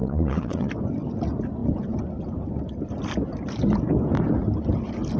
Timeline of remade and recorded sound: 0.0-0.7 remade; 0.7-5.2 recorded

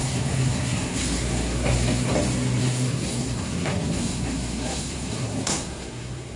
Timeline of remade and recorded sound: 0.0-2.1 remade; 2.1-2.6 recorded; 2.6-6.4 remade

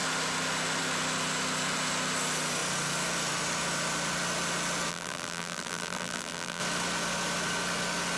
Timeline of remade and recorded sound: 0.0-4.9 recorded; 4.9-6.6 remade; 6.6-8.2 recorded

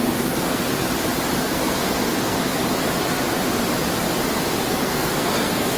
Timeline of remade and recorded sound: 0.0-0.7 remade; 0.7-1.4 recorded; 1.4-2.6 remade; 2.6-4.7 recorded; 4.7-5.8 remade

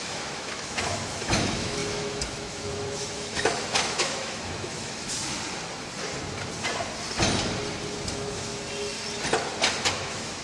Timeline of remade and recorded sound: 0.0-5.1 remade; 5.1-8.1 recorded; 8.1-8.5 remade; 8.5-9.9 recorded; 9.9-10.4 remade

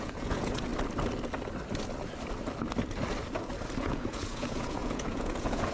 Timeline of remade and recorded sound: 0.0-0.7 remade; 0.7-3.8 recorded; 3.8-5.7 remade